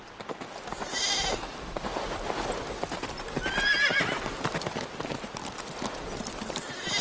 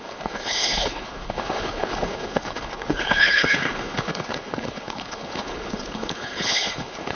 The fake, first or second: second